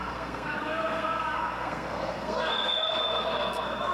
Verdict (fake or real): fake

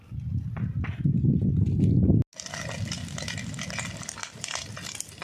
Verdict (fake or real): real